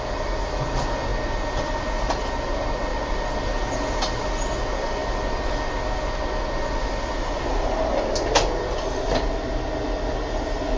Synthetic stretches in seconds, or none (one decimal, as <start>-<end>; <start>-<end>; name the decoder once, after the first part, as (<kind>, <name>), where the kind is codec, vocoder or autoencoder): none